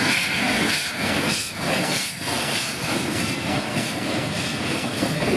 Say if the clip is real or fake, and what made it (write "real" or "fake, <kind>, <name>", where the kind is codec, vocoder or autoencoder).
fake, codec, SNAC